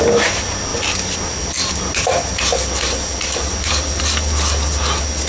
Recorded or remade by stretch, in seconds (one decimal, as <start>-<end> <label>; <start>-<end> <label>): 0.0-5.3 recorded